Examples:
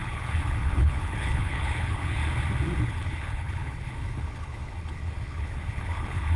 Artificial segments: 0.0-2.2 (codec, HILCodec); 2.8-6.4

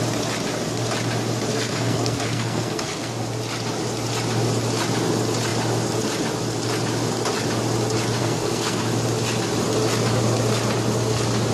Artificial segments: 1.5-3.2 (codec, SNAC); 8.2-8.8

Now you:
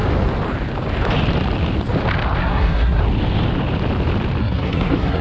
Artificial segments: 2.4-3.0 (codec, SNAC); 4.4-5.2

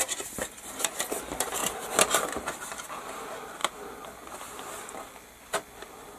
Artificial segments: none